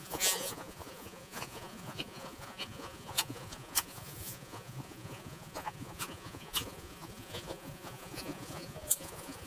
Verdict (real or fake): fake